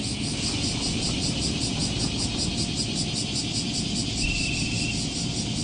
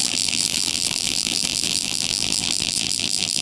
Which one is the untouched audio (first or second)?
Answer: first